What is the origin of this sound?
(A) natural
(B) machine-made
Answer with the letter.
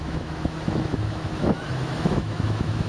B